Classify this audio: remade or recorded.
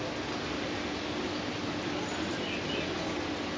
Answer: recorded